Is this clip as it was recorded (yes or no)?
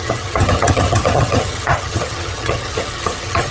no